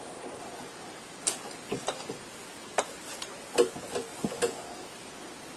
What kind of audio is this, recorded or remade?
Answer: recorded